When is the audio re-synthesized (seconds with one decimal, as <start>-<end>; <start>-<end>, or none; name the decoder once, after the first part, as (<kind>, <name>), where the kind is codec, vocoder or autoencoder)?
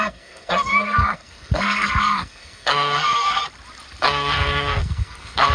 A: 0.0-3.4 (codec, SNAC); 4.0-5.5